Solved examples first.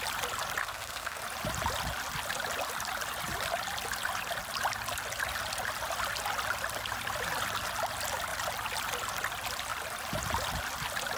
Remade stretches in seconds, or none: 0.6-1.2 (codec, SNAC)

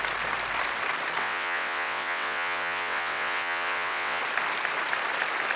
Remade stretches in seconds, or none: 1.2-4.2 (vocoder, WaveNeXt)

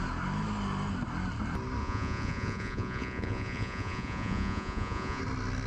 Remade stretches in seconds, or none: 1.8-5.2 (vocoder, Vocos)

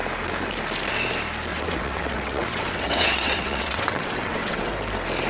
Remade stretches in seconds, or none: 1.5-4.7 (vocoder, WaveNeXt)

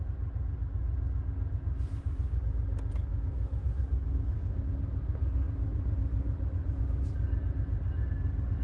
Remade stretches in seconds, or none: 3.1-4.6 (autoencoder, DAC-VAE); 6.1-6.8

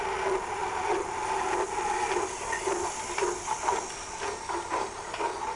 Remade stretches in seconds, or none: none

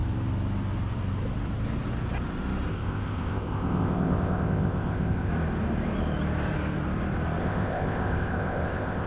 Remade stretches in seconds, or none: 2.7-5.3 (codec, ZipCodec); 7.4-9.1

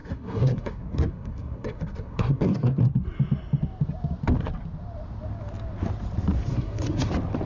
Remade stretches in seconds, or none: 0.0-2.8 (codec, SNAC); 6.5-7.1